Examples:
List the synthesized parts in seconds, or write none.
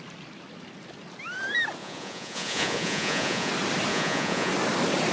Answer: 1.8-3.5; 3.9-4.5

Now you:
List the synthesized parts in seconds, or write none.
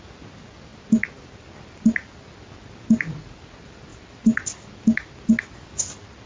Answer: none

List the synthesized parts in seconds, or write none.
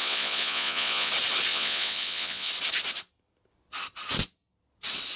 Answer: 0.0-1.1; 1.5-2.5